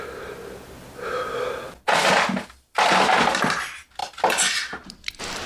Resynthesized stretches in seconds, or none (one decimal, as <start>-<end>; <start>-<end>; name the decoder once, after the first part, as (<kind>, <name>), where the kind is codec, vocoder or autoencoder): none